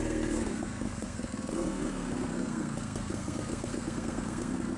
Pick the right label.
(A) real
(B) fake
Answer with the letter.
B